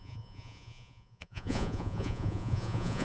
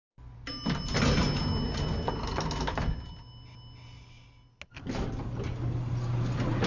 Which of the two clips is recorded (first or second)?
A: second